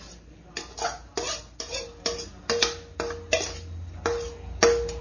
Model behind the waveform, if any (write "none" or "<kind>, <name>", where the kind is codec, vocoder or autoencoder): none